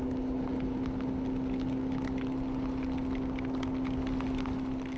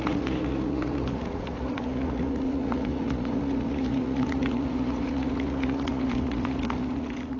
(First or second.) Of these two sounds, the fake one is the second